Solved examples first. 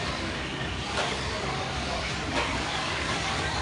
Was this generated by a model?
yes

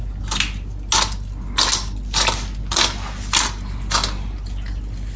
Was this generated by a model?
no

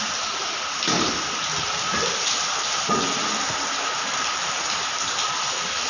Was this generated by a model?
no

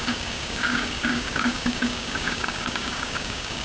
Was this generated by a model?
yes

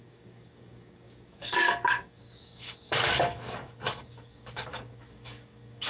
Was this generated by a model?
yes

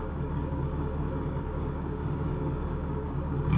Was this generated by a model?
yes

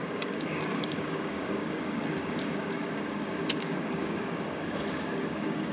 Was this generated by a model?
yes